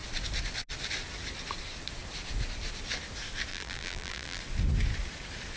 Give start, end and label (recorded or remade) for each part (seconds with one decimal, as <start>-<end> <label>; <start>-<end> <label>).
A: 0.0-3.5 recorded; 3.5-4.4 remade; 4.4-5.6 recorded